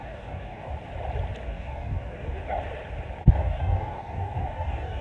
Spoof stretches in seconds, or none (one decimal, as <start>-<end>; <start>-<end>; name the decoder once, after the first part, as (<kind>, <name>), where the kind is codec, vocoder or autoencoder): 0.0-0.6 (codec, DAC); 1.4-2.4; 3.3-5.0